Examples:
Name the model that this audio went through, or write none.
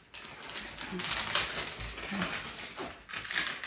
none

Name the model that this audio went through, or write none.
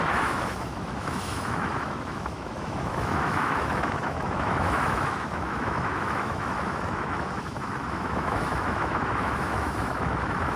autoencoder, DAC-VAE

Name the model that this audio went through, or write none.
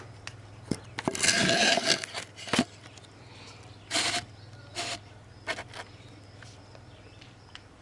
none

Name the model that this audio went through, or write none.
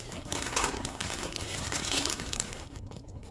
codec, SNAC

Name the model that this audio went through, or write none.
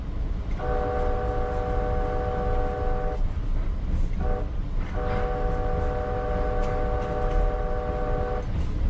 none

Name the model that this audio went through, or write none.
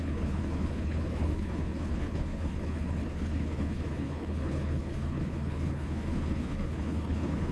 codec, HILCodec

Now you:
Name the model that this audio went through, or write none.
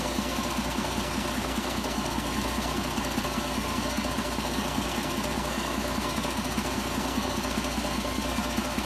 codec, SNAC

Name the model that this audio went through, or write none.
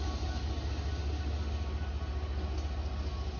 none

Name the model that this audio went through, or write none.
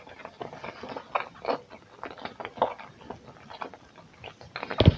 none